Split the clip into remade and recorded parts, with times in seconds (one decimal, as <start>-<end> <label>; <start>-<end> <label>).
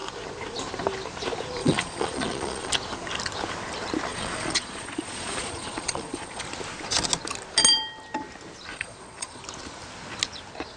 0.0-1.6 recorded; 1.6-2.7 remade; 2.7-4.1 recorded; 4.1-6.4 remade; 6.4-8.7 recorded; 8.7-9.4 remade; 9.4-10.8 recorded